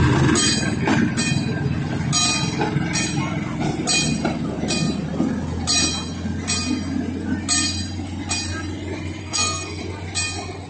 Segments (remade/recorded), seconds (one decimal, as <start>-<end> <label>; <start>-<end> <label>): 0.0-9.2 recorded; 9.2-9.8 remade; 9.8-10.7 recorded